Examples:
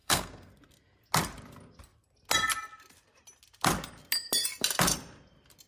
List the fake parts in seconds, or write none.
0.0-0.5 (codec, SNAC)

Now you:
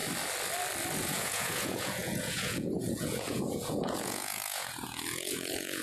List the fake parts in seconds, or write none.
1.0-5.8 (vocoder, Vocos)

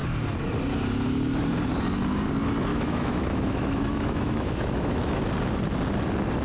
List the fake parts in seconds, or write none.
2.7-5.2 (autoencoder, DAC-VAE)

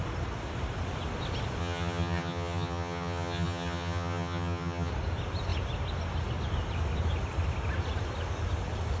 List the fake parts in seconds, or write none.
1.6-4.9 (vocoder, HiFi-GAN)